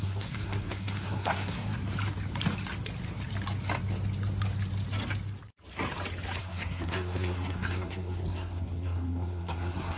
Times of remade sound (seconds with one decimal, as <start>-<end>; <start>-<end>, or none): 0.0-1.8; 6.4-10.0